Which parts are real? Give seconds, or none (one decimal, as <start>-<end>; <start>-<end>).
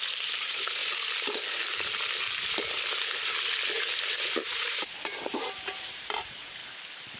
0.8-3.7; 6.6-7.2